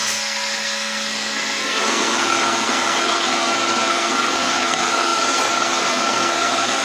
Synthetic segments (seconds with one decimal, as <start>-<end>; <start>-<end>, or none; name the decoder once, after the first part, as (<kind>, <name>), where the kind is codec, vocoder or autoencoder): 0.0-6.8 (codec, SNAC)